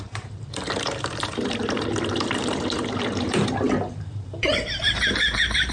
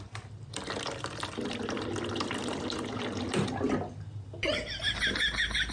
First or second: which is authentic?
second